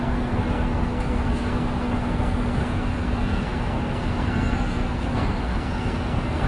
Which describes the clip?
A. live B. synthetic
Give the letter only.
B